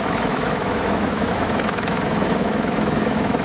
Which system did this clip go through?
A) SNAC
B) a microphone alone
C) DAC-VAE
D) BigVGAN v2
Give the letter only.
C